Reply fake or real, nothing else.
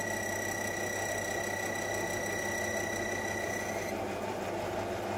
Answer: real